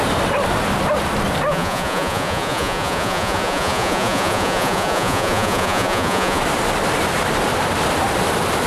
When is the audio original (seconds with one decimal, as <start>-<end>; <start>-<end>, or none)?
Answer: 0.0-1.5; 6.4-8.7